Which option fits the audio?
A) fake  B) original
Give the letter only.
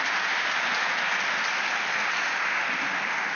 B